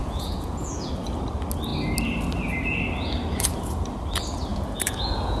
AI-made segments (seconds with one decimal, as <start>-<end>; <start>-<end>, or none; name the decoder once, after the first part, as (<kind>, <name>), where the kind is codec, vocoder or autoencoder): 0.0-0.9 (vocoder, Vocos); 4.5-5.4